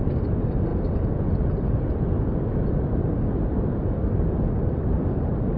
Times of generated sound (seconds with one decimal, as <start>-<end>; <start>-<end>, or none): none